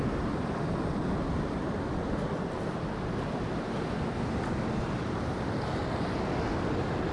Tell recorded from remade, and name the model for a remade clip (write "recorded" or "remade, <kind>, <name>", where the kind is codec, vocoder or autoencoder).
recorded